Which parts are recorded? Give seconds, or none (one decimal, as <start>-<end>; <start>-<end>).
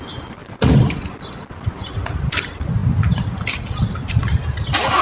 0.0-0.4; 1.5-5.0